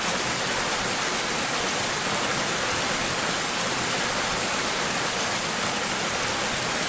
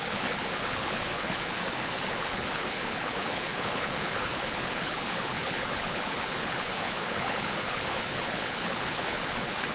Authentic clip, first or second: first